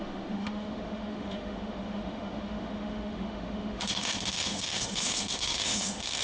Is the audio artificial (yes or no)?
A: yes